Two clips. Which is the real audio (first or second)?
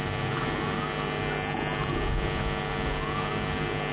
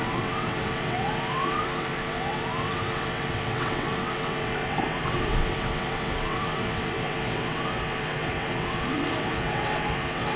first